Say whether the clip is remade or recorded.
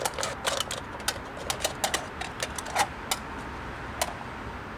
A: recorded